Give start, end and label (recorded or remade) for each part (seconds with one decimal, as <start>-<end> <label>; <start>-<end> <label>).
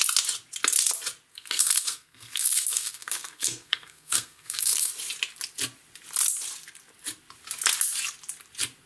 0.0-1.3 recorded; 1.3-4.9 remade; 4.9-8.9 recorded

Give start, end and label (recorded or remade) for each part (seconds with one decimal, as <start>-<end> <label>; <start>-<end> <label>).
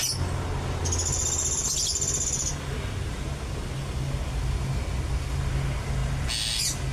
0.0-6.9 recorded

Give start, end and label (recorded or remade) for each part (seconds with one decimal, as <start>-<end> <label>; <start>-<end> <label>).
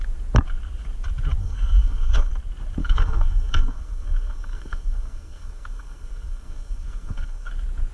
0.0-1.4 recorded; 1.4-2.3 remade; 2.3-2.8 recorded; 2.8-7.5 remade; 7.5-7.9 recorded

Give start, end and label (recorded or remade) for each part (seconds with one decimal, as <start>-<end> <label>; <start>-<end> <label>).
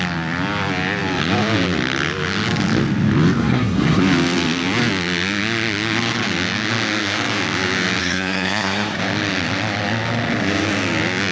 0.0-3.4 recorded; 3.4-4.0 remade; 4.0-8.0 recorded; 8.0-9.0 remade; 9.0-11.3 recorded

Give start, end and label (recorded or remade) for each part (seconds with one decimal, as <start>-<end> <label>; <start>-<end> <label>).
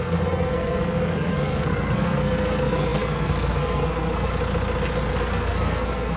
0.0-4.3 remade; 4.3-5.1 recorded; 5.1-6.2 remade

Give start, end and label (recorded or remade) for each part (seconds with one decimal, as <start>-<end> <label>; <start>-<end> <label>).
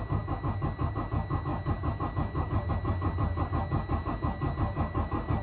0.0-5.4 recorded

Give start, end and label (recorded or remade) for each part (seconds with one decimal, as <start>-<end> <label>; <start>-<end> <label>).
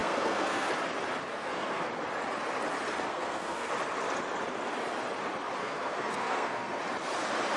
0.0-0.7 remade; 0.7-1.3 recorded; 1.3-1.9 remade; 1.9-3.1 recorded; 3.1-3.7 remade; 3.7-5.6 recorded; 5.6-6.8 remade; 6.8-7.6 recorded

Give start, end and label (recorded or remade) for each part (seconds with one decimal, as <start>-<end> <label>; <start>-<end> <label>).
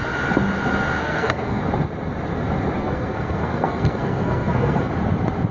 0.0-1.0 recorded; 1.0-1.6 remade; 1.6-2.8 recorded; 2.8-4.9 remade; 4.9-5.5 recorded